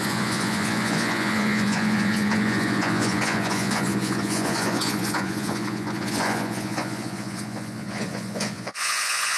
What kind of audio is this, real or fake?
fake